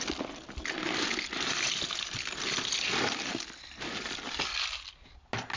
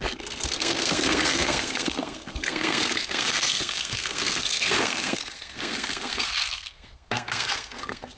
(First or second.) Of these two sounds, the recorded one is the first